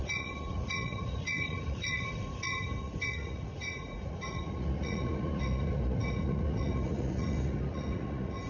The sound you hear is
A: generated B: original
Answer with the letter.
A